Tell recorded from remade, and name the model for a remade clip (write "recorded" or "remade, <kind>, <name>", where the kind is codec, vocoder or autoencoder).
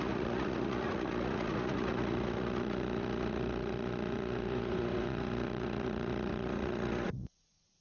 remade, vocoder, Vocos